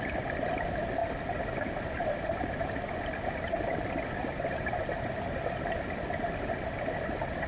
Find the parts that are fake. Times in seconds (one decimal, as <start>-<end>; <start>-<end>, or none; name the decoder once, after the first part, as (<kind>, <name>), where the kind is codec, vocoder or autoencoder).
none